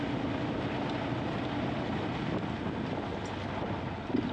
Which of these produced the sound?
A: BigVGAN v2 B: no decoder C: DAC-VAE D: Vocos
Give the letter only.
B